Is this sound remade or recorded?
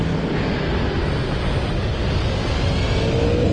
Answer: recorded